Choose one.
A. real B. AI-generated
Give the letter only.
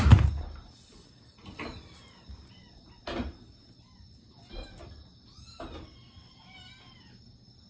A